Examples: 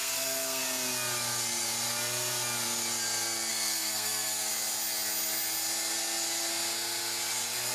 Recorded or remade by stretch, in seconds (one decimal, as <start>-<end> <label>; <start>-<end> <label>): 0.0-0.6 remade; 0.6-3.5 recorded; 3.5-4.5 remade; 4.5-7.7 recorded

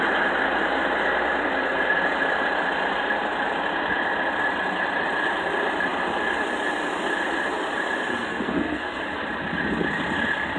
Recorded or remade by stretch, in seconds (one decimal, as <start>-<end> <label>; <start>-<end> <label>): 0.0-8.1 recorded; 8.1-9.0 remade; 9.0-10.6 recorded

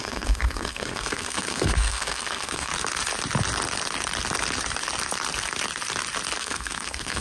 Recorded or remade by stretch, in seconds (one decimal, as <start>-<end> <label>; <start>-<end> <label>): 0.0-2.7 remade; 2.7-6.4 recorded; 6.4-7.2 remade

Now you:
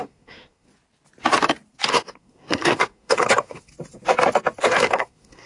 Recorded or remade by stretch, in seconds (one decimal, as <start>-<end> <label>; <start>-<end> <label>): 0.0-0.7 remade; 0.7-1.9 recorded; 1.9-3.7 remade; 3.7-4.6 recorded; 4.6-5.5 remade